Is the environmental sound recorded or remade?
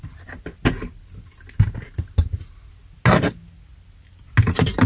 recorded